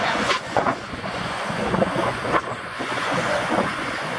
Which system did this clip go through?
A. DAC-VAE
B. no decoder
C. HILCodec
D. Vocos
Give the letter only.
D